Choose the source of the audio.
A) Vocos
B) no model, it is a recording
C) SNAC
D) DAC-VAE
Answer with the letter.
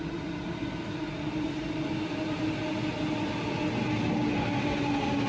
B